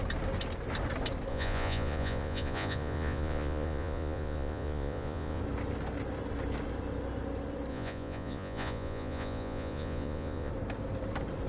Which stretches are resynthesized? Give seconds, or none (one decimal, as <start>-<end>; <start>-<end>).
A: 1.3-5.4; 7.7-10.5